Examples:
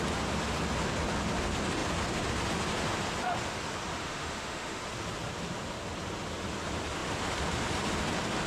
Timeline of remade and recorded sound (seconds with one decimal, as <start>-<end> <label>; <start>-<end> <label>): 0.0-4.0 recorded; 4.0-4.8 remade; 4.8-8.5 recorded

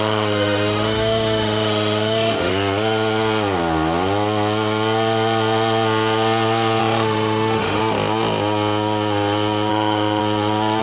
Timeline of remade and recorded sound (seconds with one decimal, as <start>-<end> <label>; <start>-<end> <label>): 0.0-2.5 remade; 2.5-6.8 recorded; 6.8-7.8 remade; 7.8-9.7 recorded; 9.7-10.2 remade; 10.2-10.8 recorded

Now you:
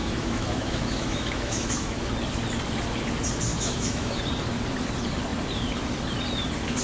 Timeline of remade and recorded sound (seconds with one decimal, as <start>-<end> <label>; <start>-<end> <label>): 0.0-2.0 remade; 2.0-3.5 recorded; 3.5-4.2 remade; 4.2-6.8 recorded